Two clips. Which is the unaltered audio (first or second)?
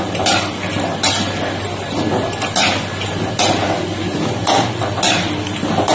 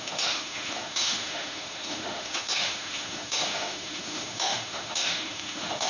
first